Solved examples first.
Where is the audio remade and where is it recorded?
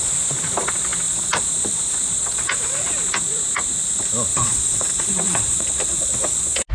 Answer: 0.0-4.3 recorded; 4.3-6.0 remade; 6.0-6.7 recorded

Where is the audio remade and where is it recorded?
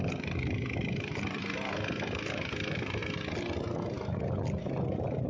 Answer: 0.0-3.0 remade; 3.0-5.3 recorded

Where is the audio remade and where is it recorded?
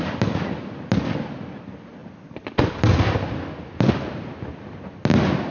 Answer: 0.0-5.5 recorded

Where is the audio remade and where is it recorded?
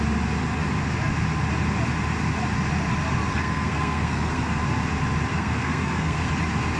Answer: 0.0-3.3 recorded; 3.3-4.6 remade; 4.6-5.3 recorded; 5.3-6.3 remade; 6.3-6.8 recorded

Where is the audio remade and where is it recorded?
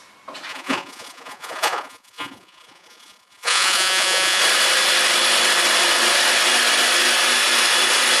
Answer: 0.0-0.5 recorded; 0.5-4.4 remade; 4.4-8.2 recorded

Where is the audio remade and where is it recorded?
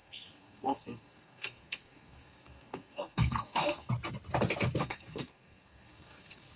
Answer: 0.0-3.9 remade; 3.9-4.8 recorded; 4.8-6.6 remade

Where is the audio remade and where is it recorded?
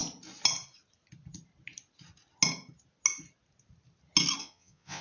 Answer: 0.0-4.4 recorded; 4.4-5.0 remade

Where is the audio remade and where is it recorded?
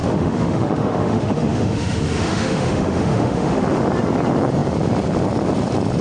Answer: 0.0-3.6 remade; 3.6-6.0 recorded